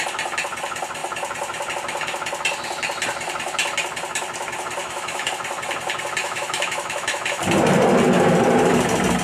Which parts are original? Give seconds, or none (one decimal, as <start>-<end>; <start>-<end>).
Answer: 0.0-4.8; 5.3-6.2; 7.4-9.2